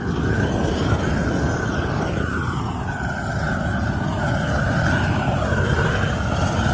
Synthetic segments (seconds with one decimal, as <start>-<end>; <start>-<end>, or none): 0.0-1.2; 5.2-6.7